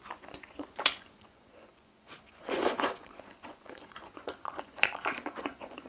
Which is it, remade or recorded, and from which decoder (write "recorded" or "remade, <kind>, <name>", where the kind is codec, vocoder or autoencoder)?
remade, vocoder, Vocos